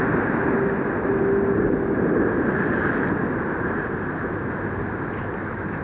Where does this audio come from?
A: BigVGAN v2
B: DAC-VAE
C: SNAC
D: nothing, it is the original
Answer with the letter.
D